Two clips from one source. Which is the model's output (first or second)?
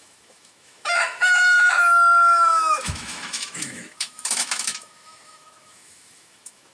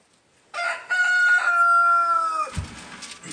first